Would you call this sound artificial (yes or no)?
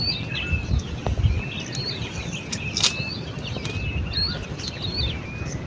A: no